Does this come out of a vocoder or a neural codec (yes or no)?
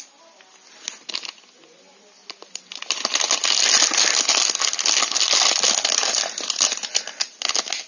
no